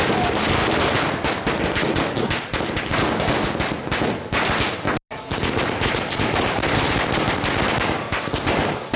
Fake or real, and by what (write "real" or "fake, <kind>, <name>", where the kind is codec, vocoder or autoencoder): real